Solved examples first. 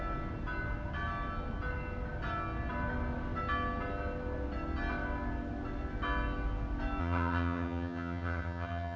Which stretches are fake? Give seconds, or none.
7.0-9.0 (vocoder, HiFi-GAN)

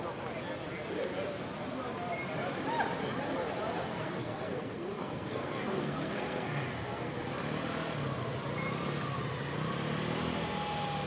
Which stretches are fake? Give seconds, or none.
3.8-7.3 (codec, SNAC)

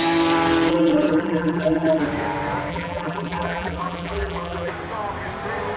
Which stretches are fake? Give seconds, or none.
0.7-2.0 (vocoder, BigVGAN v2); 2.7-4.7

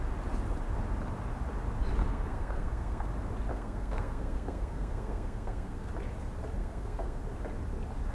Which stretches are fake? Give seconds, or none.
2.0-3.1 (codec, SNAC); 3.5-5.9; 6.6-7.2

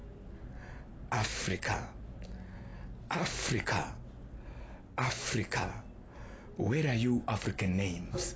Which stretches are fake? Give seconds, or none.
none

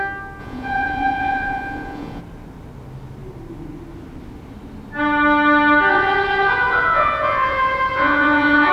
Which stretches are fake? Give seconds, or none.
0.4-2.2 (vocoder, Vocos); 5.9-8.7

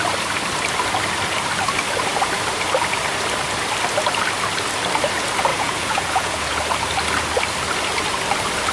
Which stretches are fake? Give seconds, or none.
5.5-6.6 (vocoder, Vocos)